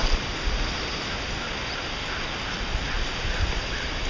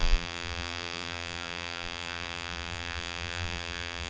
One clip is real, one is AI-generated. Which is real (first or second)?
first